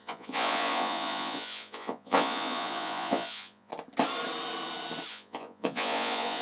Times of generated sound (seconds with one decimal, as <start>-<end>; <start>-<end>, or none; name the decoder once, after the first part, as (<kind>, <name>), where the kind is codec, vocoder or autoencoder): 0.0-3.7 (vocoder, Vocos); 5.1-6.4